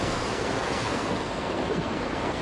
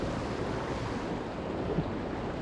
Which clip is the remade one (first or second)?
first